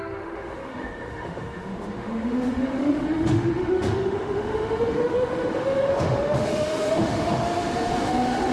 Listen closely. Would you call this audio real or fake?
fake